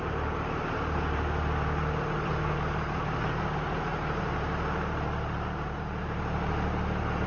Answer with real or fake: fake